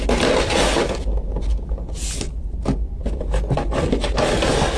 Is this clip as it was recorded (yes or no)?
yes